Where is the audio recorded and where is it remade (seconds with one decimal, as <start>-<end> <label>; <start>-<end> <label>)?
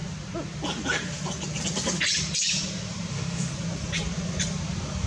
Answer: 0.0-3.1 recorded; 3.1-3.5 remade; 3.5-5.1 recorded